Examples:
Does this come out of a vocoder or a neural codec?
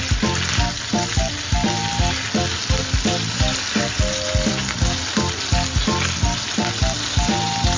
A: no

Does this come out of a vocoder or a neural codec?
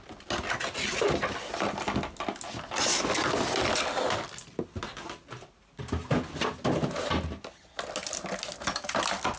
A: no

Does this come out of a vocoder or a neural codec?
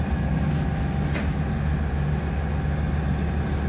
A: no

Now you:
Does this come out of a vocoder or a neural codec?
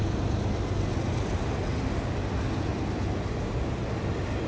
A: no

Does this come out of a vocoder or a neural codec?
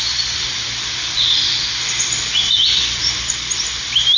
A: no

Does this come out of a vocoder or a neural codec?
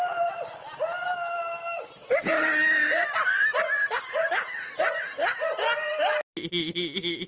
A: no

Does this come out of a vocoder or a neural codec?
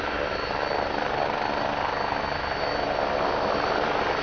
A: no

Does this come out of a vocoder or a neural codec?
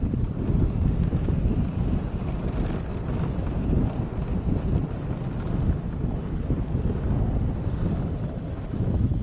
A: no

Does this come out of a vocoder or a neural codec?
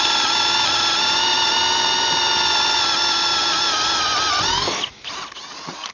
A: no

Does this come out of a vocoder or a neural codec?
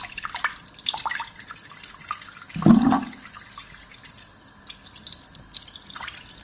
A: no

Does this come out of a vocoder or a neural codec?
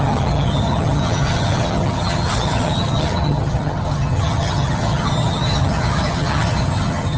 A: yes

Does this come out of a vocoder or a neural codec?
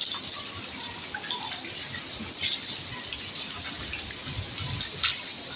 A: no